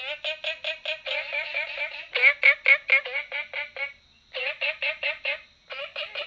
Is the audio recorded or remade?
recorded